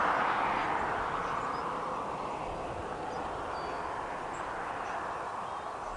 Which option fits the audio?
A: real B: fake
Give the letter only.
A